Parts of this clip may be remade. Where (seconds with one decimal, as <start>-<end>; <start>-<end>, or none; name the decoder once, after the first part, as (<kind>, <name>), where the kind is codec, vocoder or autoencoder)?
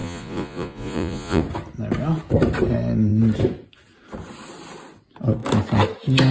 0.0-1.4 (vocoder, Vocos)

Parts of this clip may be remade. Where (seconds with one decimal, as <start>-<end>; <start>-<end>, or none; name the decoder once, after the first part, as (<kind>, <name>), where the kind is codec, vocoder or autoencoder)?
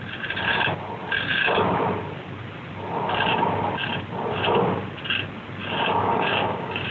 5.6-6.9 (codec, DAC)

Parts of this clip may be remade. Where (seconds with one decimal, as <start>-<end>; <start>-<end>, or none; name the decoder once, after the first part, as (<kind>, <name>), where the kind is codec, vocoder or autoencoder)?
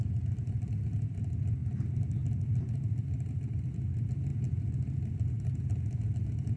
none